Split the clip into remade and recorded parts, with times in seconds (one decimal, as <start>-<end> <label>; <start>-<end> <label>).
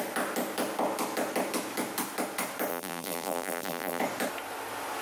0.0-2.7 recorded; 2.7-4.0 remade; 4.0-5.0 recorded